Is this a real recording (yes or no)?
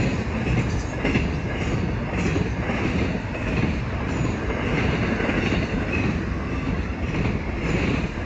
yes